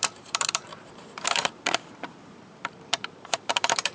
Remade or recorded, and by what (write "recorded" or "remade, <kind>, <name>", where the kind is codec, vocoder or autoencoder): remade, vocoder, BigVGAN v2